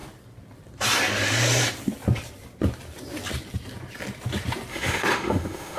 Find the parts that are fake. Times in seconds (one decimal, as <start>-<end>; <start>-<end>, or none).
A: 4.7-5.8